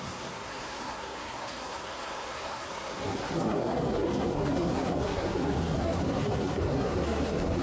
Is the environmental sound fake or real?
fake